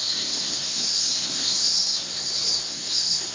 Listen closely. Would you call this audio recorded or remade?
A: remade